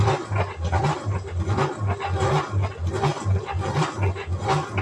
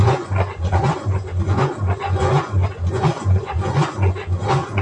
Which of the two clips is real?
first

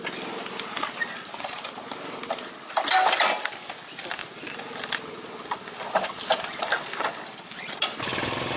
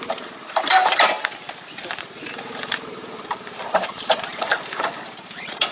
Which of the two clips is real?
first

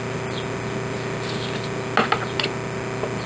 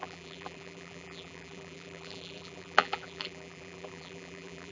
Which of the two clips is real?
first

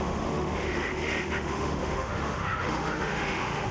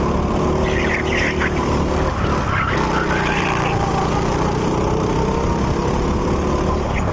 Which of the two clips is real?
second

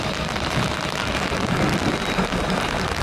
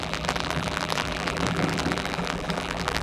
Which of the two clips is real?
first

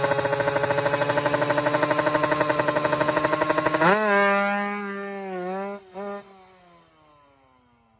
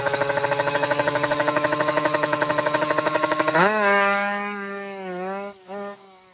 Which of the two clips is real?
first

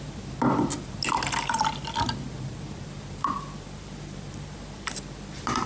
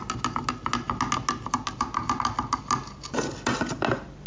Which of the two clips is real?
second